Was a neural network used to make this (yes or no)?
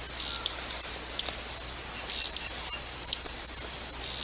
no